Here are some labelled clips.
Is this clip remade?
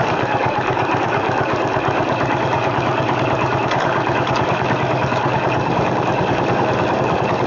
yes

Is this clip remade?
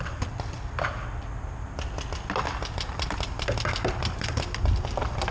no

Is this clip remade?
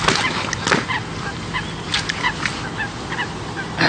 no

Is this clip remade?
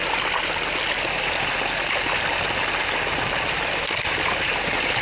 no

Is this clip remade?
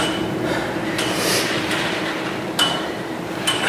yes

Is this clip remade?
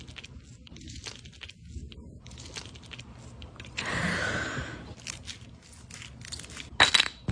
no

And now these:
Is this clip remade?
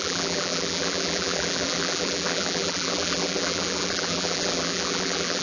yes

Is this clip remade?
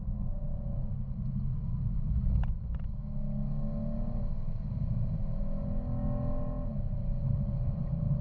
no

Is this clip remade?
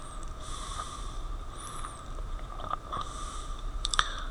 yes